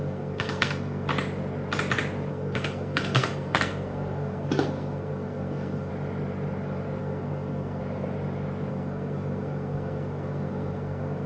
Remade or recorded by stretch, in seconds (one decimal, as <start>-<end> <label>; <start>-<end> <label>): 0.0-1.1 remade; 1.1-2.3 recorded; 2.3-5.9 remade; 5.9-7.0 recorded; 7.0-7.8 remade; 7.8-8.7 recorded; 8.7-11.3 remade